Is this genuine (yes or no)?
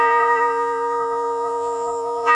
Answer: no